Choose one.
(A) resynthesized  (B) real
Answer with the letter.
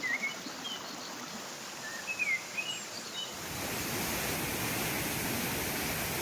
B